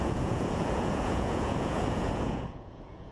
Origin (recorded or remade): remade